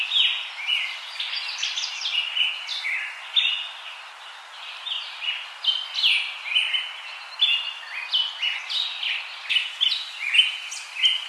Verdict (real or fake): real